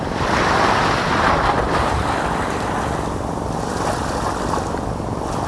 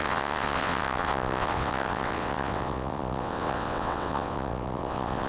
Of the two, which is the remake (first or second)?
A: second